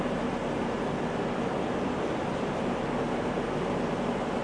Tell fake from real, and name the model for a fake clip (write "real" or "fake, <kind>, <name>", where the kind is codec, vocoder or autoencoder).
real